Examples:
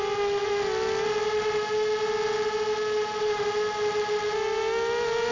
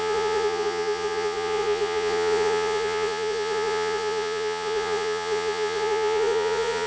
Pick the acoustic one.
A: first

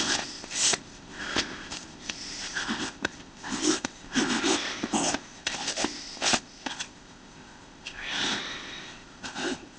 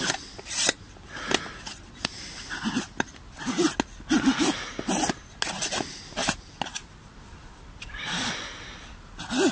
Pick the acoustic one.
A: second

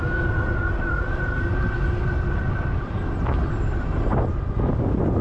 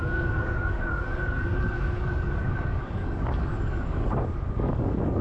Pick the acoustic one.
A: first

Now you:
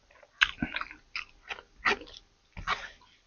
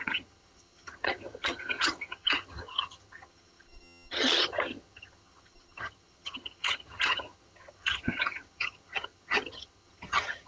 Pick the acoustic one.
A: first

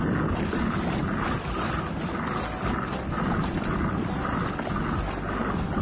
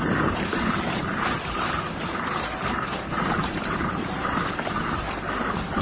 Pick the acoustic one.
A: first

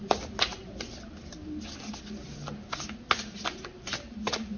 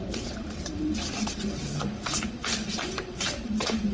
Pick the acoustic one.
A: first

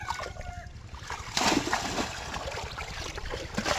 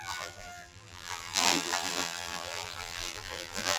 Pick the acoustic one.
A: first